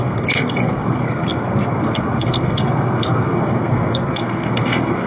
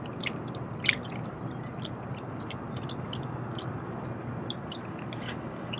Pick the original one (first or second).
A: second